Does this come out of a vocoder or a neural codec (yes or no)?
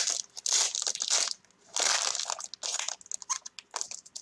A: no